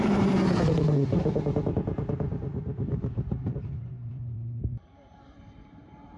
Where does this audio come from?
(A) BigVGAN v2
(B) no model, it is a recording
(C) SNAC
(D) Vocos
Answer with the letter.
A